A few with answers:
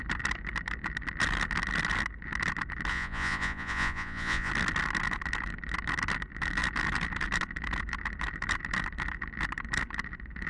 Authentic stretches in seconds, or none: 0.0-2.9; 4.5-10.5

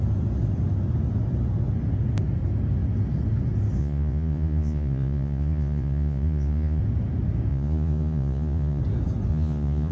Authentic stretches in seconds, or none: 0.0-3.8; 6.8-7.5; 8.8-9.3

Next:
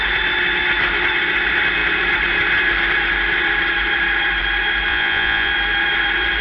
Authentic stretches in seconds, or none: 0.0-4.9; 5.5-6.4